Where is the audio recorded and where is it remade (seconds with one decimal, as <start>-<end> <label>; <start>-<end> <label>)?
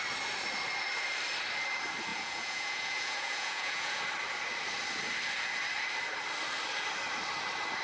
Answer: 0.0-2.1 recorded; 2.1-4.0 remade; 4.0-7.8 recorded